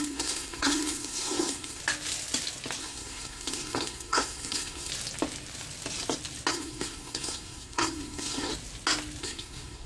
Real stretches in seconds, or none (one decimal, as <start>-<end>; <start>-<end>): 1.8-2.8; 4.9-6.5; 8.5-9.2